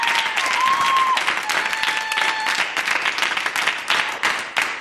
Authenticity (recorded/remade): recorded